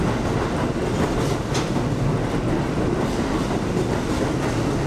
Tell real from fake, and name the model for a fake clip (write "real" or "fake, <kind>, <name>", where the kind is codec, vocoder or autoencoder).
real